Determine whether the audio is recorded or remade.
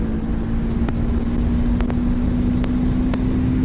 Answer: recorded